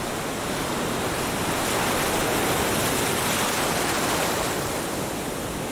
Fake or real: real